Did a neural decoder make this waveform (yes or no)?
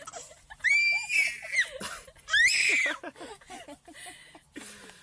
no